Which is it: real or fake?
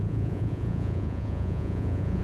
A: fake